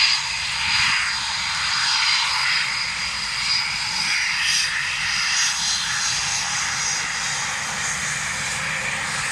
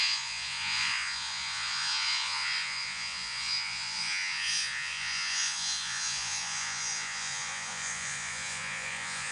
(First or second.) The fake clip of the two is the second